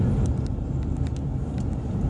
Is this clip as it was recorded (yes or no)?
yes